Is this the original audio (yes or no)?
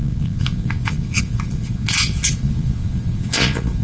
no